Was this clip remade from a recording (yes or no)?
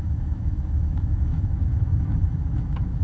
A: yes